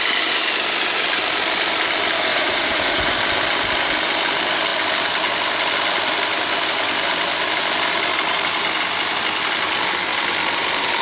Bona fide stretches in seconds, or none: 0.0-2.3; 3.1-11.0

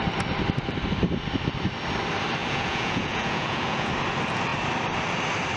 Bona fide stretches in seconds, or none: 0.0-2.4; 3.9-5.6

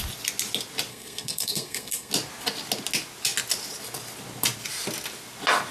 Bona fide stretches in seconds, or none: 0.0-0.9; 2.1-5.7